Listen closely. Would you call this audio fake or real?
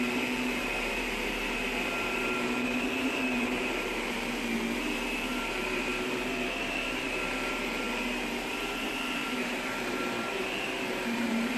fake